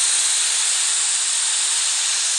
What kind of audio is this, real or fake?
real